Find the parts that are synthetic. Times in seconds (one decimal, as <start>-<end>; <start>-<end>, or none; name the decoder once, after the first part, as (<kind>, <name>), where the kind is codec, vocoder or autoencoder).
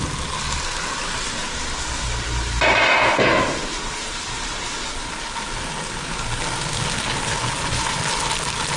7.3-8.0 (vocoder, Vocos)